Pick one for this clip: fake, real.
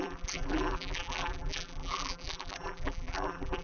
fake